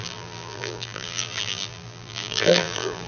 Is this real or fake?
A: fake